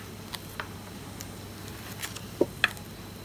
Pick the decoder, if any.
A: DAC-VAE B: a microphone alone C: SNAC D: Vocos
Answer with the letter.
B